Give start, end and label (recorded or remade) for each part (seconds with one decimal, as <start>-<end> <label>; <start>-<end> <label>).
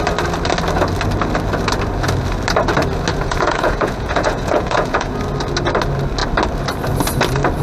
0.0-3.1 recorded; 3.1-5.2 remade; 5.2-7.6 recorded